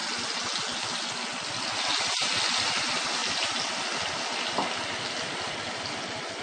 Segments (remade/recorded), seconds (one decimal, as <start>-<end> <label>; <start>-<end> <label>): 0.0-6.4 recorded